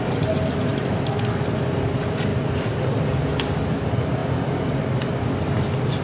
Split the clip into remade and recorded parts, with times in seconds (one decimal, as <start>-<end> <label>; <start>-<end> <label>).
0.0-0.7 recorded; 0.7-1.5 remade; 1.5-2.3 recorded; 2.3-3.3 remade; 3.3-4.2 recorded; 4.2-4.8 remade; 4.8-6.0 recorded